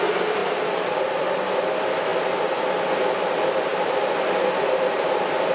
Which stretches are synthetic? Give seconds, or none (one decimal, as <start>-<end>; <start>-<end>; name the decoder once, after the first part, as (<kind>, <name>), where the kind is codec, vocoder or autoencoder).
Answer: none